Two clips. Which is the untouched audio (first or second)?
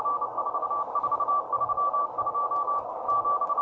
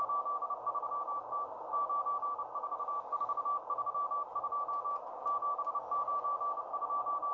second